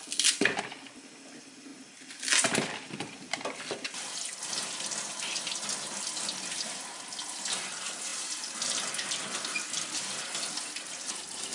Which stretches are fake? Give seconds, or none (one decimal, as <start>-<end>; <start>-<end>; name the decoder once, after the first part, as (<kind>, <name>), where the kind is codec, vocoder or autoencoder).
none